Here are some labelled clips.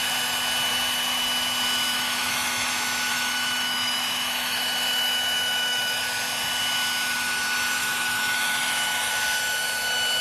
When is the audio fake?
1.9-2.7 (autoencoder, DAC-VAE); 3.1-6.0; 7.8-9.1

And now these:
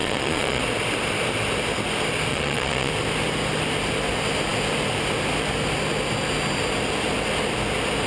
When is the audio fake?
0.0-0.6 (vocoder, Vocos); 2.3-2.9

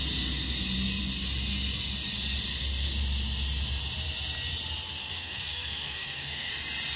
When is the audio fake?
5.0-6.5 (codec, SNAC)